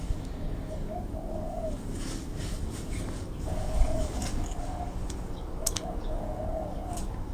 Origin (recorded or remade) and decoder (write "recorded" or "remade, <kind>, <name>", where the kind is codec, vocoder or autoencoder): remade, codec, DAC